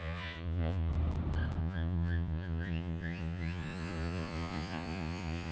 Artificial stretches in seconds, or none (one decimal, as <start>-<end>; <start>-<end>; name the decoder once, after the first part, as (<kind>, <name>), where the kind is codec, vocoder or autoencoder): 0.0-0.9 (vocoder, Vocos); 1.6-5.5